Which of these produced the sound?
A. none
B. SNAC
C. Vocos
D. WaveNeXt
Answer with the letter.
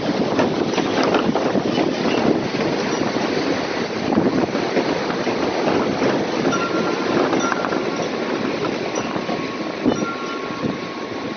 A